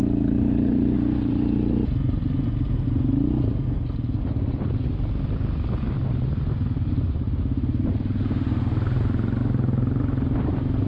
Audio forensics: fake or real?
real